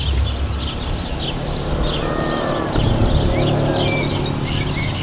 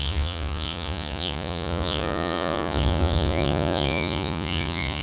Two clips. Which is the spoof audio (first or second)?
second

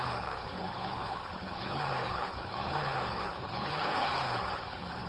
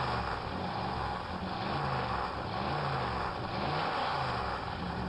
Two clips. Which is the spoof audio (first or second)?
first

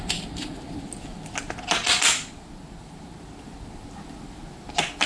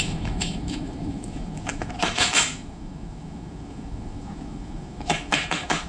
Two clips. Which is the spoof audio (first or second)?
second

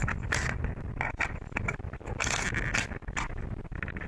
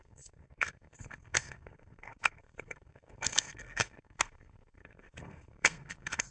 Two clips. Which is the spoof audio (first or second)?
second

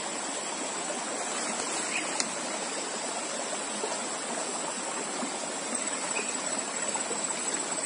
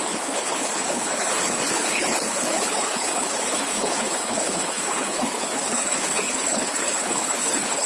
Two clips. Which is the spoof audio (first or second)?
second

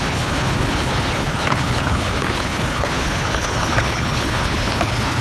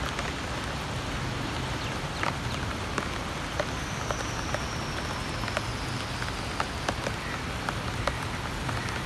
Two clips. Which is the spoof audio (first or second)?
first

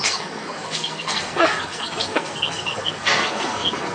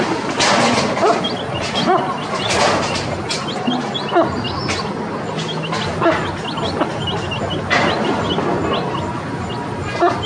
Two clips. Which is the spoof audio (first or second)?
first